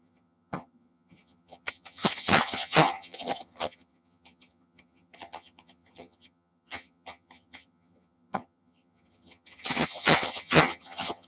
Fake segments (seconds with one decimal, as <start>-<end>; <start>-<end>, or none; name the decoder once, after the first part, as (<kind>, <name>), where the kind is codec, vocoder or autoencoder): 0.0-11.3 (vocoder, HiFi-GAN)